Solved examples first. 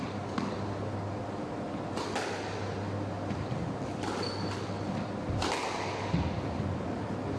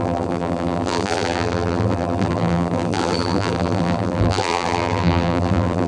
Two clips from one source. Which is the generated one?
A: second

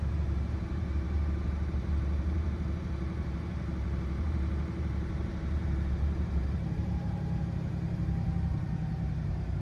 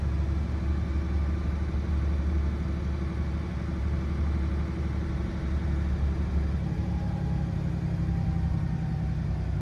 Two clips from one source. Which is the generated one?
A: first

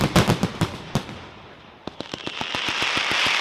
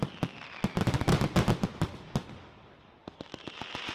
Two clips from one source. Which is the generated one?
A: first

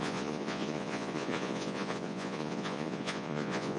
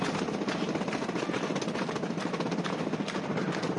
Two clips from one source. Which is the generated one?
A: first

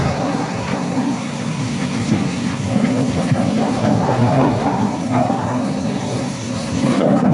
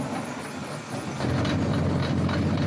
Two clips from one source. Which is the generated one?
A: first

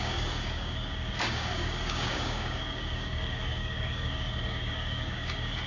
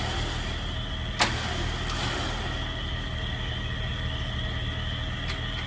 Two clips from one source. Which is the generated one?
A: first